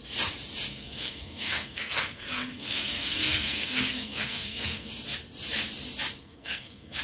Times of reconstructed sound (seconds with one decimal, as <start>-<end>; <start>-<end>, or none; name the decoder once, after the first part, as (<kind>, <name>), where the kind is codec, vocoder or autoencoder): 0.7-4.9 (codec, SNAC); 6.2-7.0